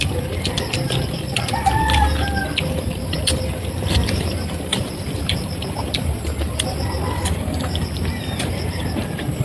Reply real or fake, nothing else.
fake